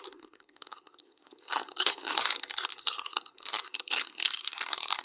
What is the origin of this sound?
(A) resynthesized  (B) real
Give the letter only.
A